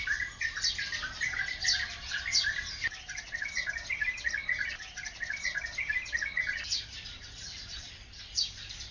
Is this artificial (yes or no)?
yes